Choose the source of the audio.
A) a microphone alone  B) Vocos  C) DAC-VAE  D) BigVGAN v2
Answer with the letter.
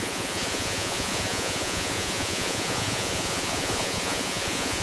B